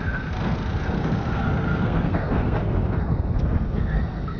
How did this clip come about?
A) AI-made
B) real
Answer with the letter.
A